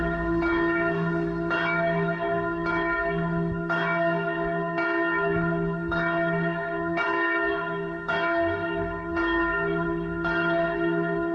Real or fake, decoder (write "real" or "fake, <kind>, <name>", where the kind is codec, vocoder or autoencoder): fake, codec, DAC